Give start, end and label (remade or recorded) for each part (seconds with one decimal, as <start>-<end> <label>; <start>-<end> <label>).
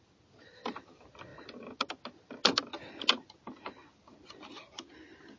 0.0-5.4 recorded